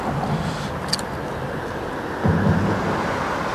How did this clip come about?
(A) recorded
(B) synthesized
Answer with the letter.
A